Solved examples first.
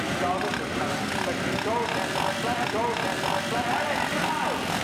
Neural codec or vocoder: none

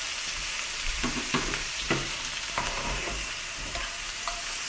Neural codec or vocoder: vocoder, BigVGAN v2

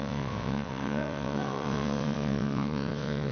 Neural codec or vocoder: vocoder, WaveNeXt